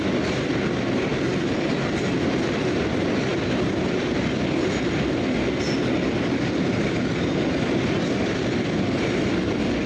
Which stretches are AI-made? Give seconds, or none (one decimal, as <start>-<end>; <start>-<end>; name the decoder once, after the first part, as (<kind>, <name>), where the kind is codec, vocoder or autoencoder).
none